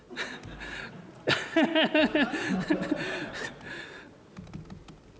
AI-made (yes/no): no